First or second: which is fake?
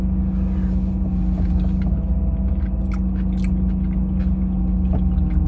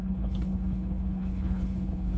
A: second